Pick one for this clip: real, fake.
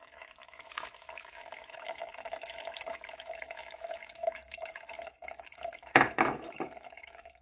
fake